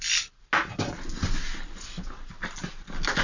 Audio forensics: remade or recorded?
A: recorded